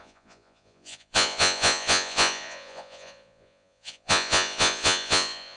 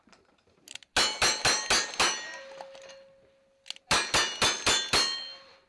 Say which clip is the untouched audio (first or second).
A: second